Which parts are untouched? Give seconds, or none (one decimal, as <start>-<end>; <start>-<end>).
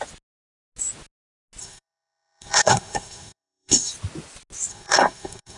0.0-1.6; 3.9-4.7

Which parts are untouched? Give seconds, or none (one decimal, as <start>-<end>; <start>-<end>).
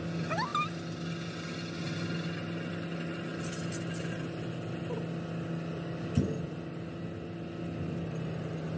0.0-8.8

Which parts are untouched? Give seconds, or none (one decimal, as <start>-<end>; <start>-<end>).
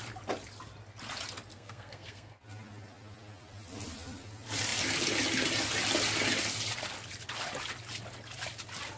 0.0-1.5; 2.4-9.0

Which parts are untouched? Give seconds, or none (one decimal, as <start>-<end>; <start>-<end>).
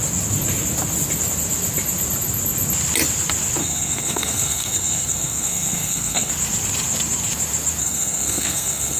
0.0-3.6; 6.3-7.8